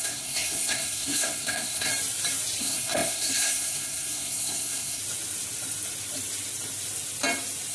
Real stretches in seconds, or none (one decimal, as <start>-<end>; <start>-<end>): 1.9-2.6; 5.0-7.7